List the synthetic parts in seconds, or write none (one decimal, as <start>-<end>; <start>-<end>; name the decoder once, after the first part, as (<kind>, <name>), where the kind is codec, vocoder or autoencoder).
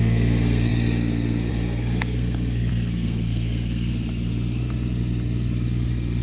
0.0-3.9 (codec, SNAC)